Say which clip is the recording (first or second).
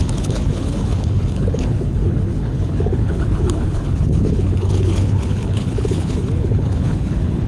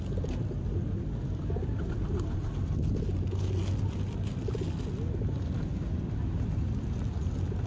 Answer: second